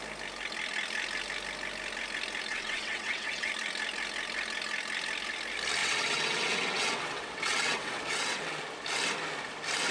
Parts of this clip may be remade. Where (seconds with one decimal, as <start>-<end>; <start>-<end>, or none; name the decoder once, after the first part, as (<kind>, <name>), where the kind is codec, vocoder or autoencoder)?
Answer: 2.5-3.5 (vocoder, WaveNeXt); 5.8-8.6